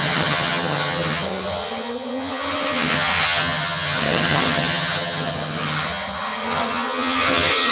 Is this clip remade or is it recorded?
remade